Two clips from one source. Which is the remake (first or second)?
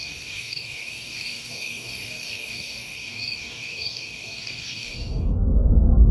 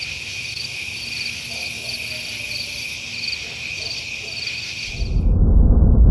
first